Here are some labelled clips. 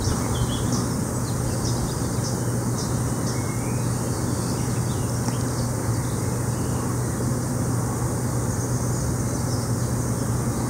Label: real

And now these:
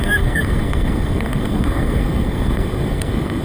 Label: fake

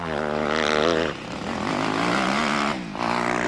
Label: real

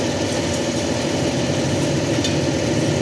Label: real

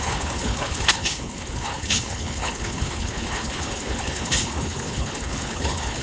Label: fake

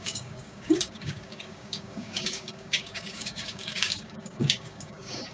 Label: fake